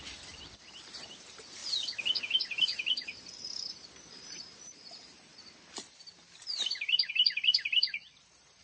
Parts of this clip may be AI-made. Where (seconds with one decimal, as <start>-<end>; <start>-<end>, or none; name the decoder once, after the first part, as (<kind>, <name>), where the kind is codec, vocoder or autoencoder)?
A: 0.0-1.6 (vocoder, BigVGAN v2); 2.2-5.3; 7.1-8.6